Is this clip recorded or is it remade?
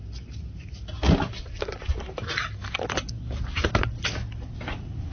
recorded